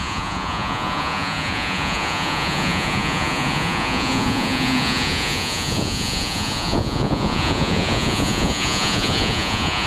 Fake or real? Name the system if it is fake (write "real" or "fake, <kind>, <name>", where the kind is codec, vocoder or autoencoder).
fake, vocoder, Vocos